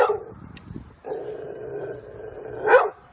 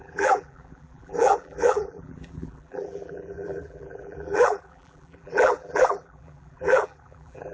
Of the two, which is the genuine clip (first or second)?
first